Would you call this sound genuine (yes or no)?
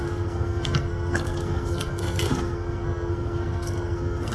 no